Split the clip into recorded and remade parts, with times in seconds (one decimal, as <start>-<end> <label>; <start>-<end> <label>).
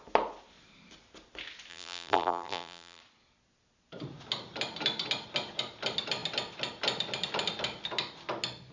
0.0-1.7 recorded; 1.7-3.0 remade; 3.0-8.7 recorded